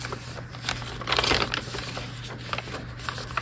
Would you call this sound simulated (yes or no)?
no